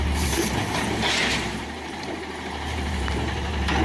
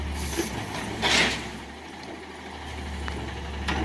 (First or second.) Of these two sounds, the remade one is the first